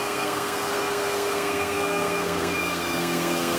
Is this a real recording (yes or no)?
no